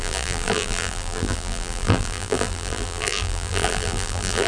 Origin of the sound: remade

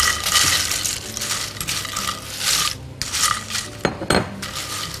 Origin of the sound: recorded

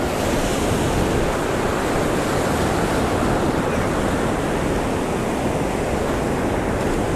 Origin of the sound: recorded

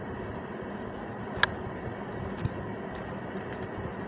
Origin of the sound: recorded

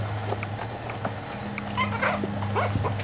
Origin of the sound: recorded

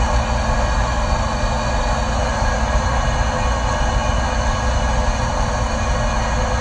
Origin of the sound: recorded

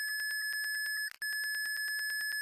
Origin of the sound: recorded